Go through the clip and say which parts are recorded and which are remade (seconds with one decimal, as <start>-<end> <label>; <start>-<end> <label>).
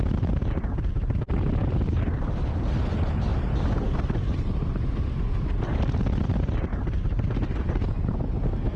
0.0-6.7 recorded; 6.7-8.8 remade